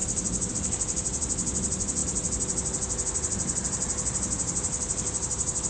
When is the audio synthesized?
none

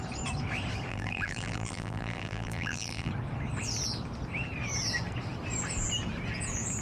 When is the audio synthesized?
0.9-3.1 (vocoder, BigVGAN v2)

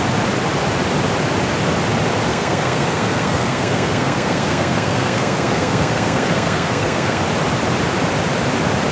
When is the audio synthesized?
2.3-7.2 (codec, SNAC)